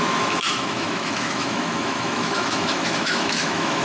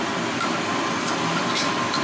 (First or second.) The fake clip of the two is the first